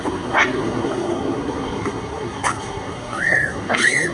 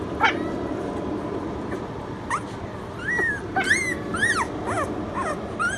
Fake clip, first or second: first